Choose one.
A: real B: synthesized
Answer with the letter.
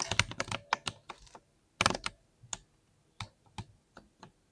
A